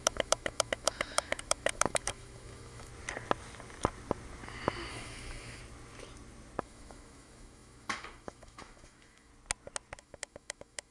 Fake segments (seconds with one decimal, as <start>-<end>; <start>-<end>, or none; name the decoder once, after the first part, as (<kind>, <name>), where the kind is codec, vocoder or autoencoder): 0.0-2.9 (autoencoder, DAC-VAE); 4.9-5.6; 6.6-9.3; 10.0-10.9